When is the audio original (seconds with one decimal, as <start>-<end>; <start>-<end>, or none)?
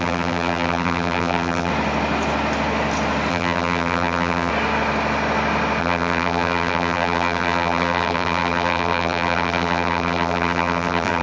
1.7-3.3; 4.5-5.8